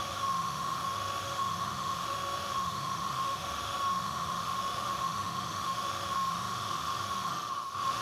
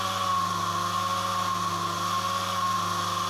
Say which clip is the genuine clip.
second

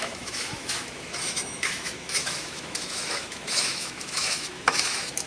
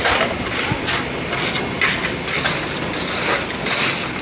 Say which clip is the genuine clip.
second